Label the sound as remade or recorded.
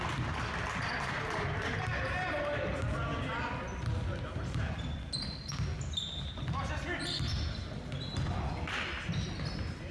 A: recorded